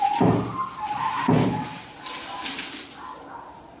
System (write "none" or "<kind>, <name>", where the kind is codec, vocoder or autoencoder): none